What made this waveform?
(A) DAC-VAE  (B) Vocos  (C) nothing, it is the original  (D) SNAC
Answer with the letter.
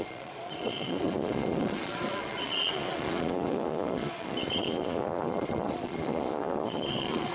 B